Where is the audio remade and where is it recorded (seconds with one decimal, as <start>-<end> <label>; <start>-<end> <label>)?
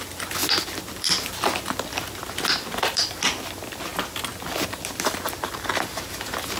0.0-3.9 remade; 3.9-4.4 recorded; 4.4-6.6 remade